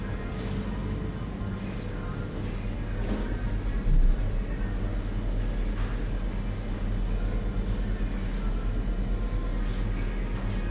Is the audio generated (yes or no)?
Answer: no